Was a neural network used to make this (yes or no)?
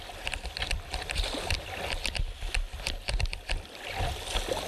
no